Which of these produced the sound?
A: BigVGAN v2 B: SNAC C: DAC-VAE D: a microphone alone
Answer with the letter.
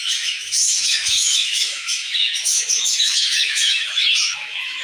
C